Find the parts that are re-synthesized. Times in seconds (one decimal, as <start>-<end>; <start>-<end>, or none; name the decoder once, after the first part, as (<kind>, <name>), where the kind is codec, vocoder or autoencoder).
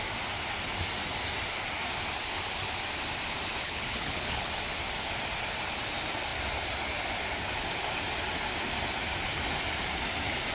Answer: 3.6-4.5 (codec, HILCodec)